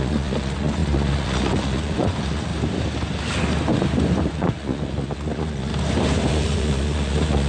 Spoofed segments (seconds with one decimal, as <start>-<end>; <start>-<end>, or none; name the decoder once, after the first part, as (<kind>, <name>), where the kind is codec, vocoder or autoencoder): 0.0-2.5 (vocoder, Vocos); 4.2-5.7; 6.3-7.5